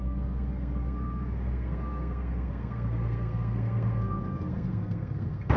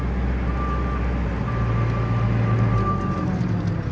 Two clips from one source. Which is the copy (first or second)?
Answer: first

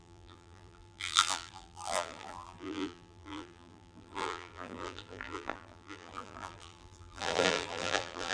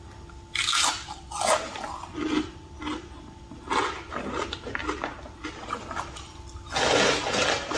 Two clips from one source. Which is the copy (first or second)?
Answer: first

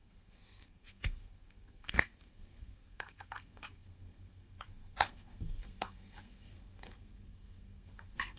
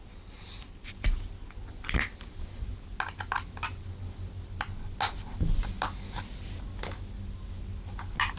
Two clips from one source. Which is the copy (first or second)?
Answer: first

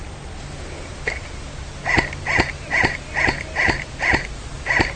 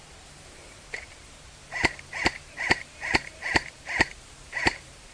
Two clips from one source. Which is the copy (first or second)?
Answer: second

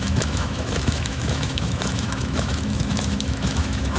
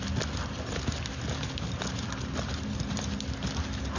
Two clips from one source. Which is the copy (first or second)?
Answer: first